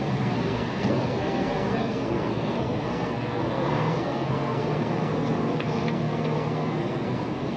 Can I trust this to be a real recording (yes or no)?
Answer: no